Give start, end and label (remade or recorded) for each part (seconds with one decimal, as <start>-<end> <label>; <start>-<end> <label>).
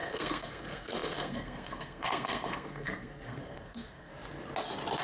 0.0-4.1 remade; 4.1-5.0 recorded